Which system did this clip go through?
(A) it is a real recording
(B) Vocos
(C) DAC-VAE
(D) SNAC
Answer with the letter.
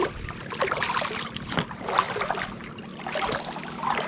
A